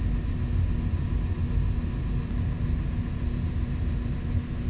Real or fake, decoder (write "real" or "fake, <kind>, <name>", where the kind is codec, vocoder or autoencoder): real